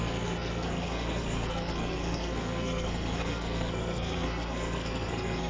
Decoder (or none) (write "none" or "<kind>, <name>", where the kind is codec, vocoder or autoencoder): codec, SNAC